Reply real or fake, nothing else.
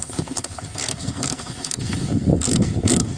fake